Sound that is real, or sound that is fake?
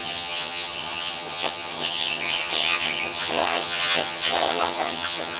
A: fake